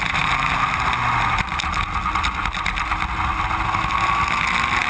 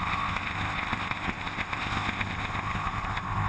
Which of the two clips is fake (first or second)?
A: second